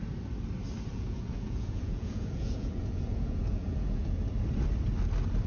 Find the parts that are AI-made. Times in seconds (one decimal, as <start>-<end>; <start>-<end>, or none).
0.9-4.2